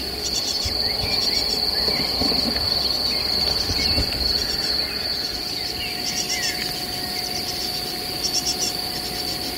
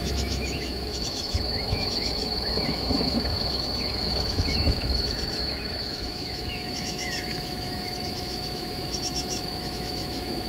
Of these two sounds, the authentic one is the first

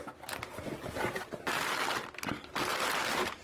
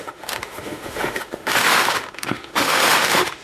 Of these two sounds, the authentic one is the first